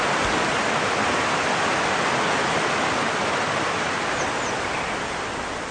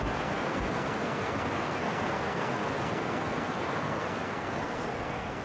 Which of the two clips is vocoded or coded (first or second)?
second